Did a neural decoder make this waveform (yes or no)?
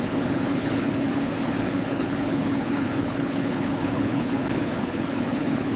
yes